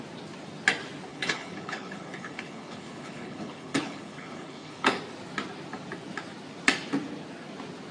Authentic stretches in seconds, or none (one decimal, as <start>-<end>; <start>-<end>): 0.0-1.1; 5.0-7.9

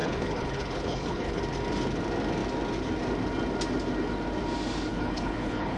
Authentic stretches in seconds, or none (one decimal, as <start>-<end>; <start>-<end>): 1.4-4.9